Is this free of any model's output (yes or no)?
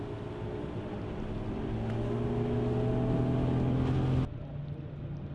yes